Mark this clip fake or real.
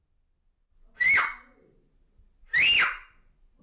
real